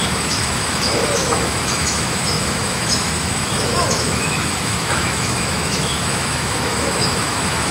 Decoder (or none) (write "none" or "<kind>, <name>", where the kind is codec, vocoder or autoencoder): autoencoder, DAC-VAE